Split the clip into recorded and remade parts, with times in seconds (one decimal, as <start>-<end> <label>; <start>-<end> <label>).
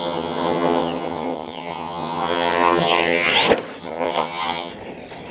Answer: 0.0-3.3 remade; 3.3-3.8 recorded; 3.8-4.7 remade; 4.7-5.3 recorded